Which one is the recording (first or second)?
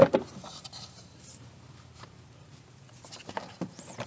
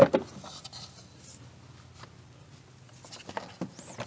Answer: second